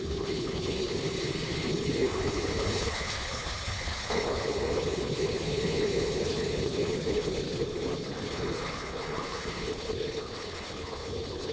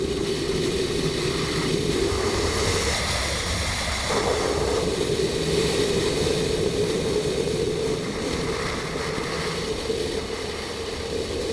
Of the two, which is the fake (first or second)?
first